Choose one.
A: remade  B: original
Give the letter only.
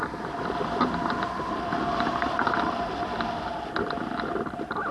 B